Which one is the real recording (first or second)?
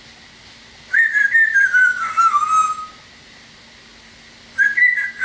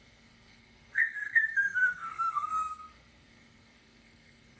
first